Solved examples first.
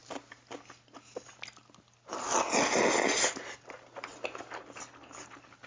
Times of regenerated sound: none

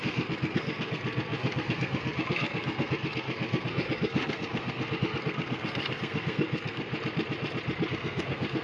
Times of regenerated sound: 0.0-6.9 (codec, SNAC); 7.9-8.6

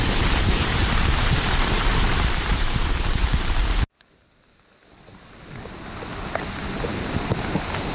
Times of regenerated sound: 0.6-3.7 (vocoder, BigVGAN v2); 6.9-7.5

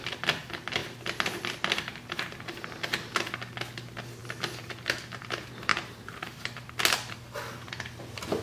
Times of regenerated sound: 5.7-6.7 (vocoder, BigVGAN v2)